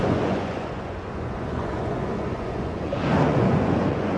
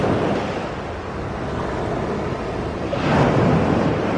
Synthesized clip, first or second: first